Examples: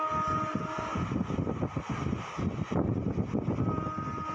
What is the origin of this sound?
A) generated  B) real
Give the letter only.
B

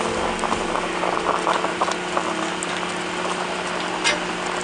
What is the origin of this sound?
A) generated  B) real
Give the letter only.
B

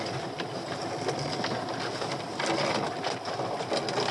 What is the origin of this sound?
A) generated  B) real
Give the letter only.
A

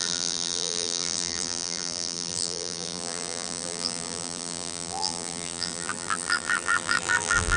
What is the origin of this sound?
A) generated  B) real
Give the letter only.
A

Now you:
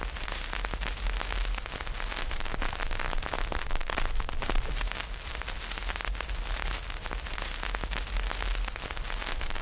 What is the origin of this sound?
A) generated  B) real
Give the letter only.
B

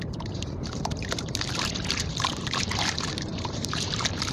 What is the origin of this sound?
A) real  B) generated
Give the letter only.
B